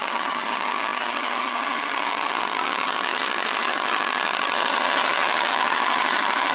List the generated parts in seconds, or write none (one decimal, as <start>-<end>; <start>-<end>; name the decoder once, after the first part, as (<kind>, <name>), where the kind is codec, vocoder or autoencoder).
0.0-6.5 (vocoder, HiFi-GAN)